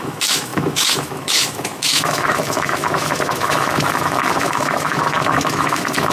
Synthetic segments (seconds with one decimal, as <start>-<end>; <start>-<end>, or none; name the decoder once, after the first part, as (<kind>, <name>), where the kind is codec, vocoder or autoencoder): 0.0-6.1 (autoencoder, DAC-VAE)